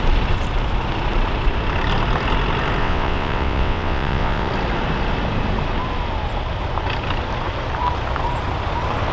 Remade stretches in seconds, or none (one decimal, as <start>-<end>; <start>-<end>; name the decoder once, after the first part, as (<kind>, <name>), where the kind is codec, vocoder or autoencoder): 2.8-4.5 (vocoder, WaveNeXt)